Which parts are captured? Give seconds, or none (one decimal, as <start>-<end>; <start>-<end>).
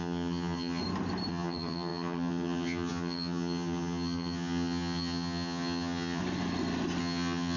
0.8-1.3; 6.2-7.0